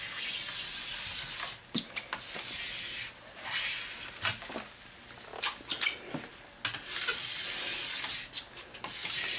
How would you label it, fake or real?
real